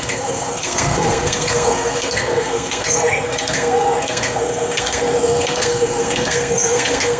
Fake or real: fake